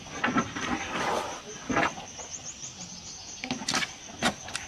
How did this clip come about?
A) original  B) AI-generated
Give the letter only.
A